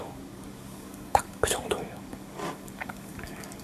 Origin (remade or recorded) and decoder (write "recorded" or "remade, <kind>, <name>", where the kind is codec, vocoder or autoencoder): remade, codec, DAC